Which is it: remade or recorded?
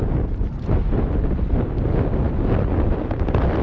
recorded